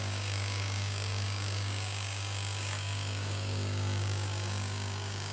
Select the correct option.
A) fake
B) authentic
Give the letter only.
A